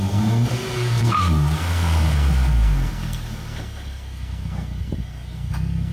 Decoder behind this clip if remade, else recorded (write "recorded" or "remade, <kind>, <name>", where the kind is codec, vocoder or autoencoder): remade, codec, SNAC